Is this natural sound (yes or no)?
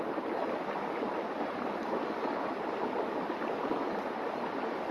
yes